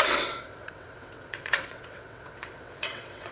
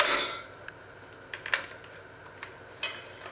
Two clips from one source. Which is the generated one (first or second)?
first